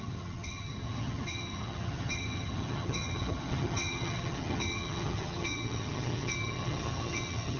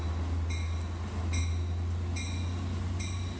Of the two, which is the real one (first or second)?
second